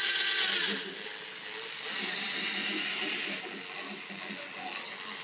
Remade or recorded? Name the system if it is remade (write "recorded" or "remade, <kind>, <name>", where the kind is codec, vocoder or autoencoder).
recorded